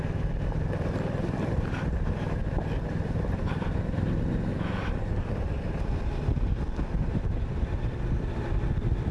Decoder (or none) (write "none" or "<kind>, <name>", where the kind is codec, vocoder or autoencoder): vocoder, BigVGAN v2